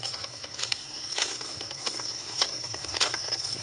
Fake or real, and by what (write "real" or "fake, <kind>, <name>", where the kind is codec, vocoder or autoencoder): fake, codec, SNAC